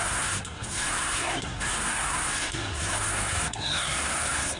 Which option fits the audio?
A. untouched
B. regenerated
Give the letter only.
B